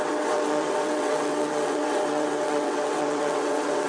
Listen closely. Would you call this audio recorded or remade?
remade